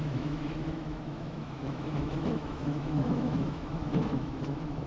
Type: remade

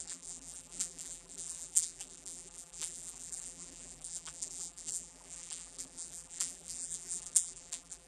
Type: remade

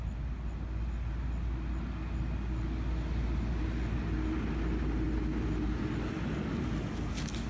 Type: recorded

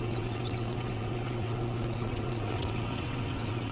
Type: remade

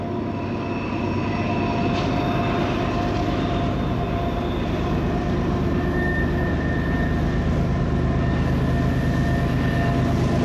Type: recorded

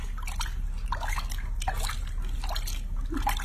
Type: recorded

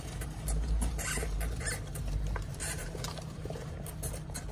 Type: remade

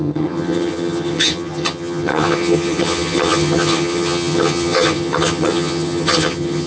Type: remade